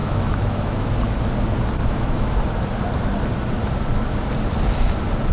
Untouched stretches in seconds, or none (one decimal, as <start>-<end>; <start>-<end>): 0.9-1.8; 2.4-5.3